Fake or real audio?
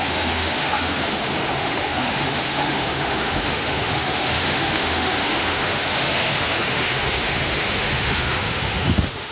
fake